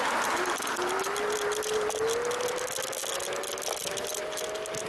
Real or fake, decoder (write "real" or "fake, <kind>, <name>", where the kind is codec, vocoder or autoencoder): real